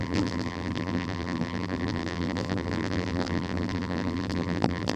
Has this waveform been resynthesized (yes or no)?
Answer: yes